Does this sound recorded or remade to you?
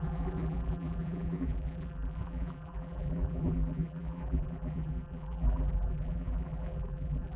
remade